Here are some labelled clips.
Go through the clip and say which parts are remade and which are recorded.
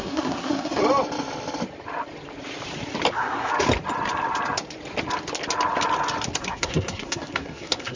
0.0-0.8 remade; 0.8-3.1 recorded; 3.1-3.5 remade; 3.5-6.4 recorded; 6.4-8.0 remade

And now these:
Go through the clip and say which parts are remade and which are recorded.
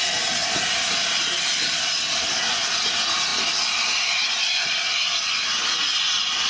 0.0-6.5 recorded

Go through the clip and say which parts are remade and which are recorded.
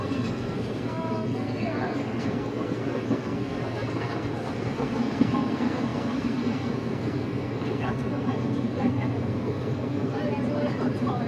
0.0-10.2 remade; 10.2-11.3 recorded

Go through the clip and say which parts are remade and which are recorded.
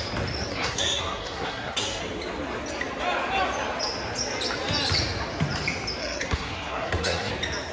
0.0-0.5 recorded; 0.5-2.0 remade; 2.0-6.0 recorded; 6.0-7.3 remade; 7.3-7.7 recorded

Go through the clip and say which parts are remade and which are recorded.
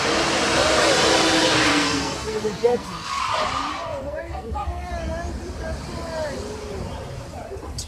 0.0-1.7 recorded; 1.7-3.2 remade; 3.2-3.7 recorded; 3.7-4.9 remade; 4.9-7.9 recorded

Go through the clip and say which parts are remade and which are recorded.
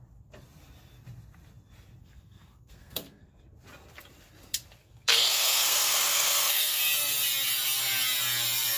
0.0-2.0 recorded; 2.0-3.3 remade; 3.3-4.8 recorded; 4.8-6.8 remade; 6.8-8.8 recorded